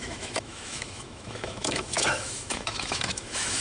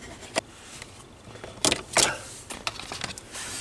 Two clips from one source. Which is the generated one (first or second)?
first